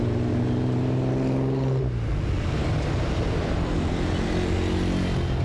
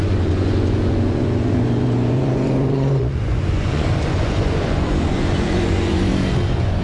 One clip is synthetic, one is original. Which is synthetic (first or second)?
second